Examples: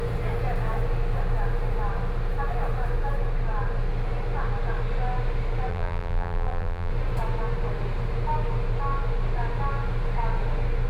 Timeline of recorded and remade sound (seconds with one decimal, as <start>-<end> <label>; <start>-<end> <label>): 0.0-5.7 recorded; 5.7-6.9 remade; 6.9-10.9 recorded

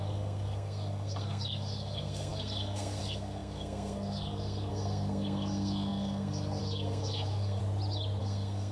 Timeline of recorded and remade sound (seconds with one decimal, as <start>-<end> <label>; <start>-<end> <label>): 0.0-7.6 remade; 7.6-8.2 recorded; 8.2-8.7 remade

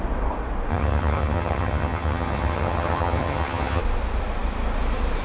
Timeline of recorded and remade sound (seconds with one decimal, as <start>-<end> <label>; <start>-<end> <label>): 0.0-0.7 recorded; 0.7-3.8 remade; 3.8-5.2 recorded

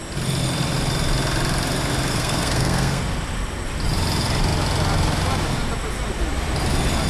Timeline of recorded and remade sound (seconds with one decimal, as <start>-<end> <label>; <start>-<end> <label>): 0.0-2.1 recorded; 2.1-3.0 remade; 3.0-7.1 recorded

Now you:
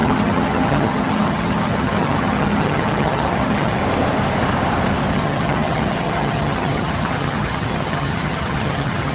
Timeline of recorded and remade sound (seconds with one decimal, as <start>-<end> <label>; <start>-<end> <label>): 0.0-3.8 remade; 3.8-5.1 recorded; 5.1-9.1 remade